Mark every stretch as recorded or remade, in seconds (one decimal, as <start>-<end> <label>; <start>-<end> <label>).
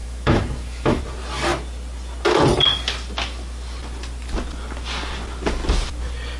0.0-1.0 remade; 1.0-6.4 recorded